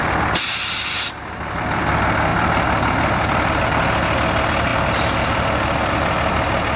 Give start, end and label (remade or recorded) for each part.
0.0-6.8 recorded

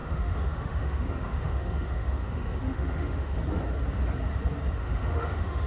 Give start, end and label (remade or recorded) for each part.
0.0-3.4 remade; 3.4-4.7 recorded; 4.7-5.7 remade

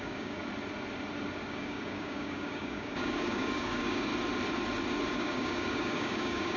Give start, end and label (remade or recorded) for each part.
0.0-0.4 remade; 0.4-1.5 recorded; 1.5-4.1 remade; 4.1-5.1 recorded; 5.1-6.6 remade